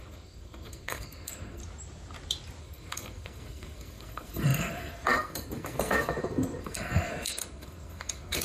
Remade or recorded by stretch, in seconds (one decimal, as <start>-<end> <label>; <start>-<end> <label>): 0.0-1.6 remade; 1.6-2.6 recorded; 2.6-8.4 remade